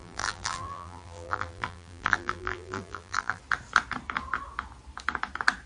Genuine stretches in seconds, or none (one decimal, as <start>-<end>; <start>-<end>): 3.4-5.7